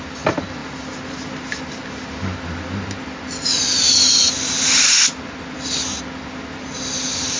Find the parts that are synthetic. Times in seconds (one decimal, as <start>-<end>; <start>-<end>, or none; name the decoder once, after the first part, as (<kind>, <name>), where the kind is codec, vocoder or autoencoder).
none